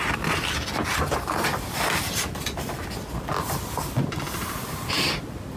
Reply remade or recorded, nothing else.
recorded